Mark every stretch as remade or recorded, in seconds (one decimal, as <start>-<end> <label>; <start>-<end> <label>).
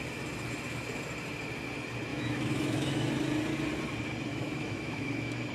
0.0-2.1 recorded; 2.1-3.1 remade; 3.1-4.3 recorded; 4.3-5.5 remade